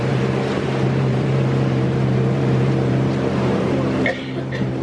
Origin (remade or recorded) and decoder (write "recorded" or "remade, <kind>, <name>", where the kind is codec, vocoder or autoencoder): remade, vocoder, BigVGAN v2